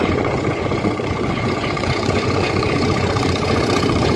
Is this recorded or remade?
remade